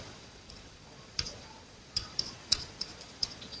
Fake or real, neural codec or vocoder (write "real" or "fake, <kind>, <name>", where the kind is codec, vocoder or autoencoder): fake, vocoder, Vocos